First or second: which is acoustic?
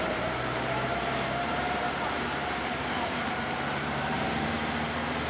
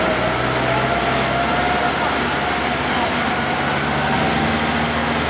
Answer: second